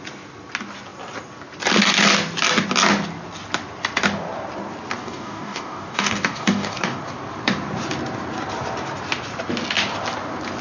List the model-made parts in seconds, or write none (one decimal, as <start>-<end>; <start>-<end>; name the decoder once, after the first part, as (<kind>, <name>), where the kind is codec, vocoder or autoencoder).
5.0-7.0 (codec, DAC)

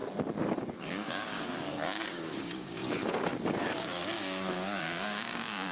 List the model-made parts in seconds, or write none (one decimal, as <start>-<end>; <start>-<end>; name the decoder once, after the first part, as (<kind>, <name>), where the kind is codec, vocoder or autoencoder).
0.7-5.7 (codec, DAC)

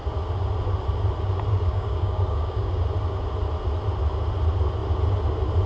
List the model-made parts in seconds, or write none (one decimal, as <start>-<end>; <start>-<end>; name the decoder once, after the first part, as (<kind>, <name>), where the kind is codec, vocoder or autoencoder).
1.5-2.8 (codec, DAC)

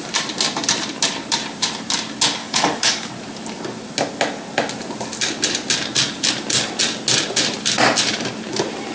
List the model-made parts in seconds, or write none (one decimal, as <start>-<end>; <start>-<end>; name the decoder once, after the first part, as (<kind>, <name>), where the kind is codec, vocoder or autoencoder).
2.4-3.1 (codec, DAC)

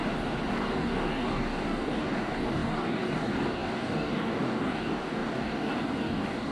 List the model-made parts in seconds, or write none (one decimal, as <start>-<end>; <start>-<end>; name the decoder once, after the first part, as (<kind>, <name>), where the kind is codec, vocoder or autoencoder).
0.5-6.5 (codec, DAC)